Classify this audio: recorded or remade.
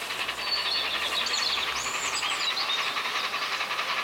recorded